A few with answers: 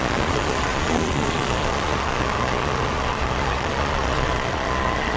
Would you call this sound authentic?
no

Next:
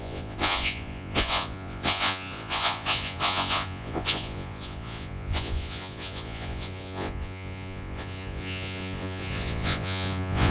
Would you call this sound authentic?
no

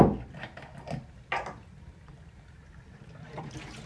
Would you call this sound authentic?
yes